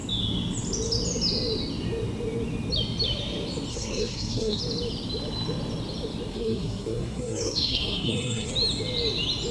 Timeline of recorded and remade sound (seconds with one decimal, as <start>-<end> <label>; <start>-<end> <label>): 0.0-3.7 recorded; 3.7-4.6 remade; 4.6-6.3 recorded; 6.3-8.5 remade; 8.5-9.5 recorded